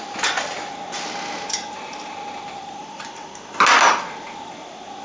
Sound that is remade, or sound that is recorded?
recorded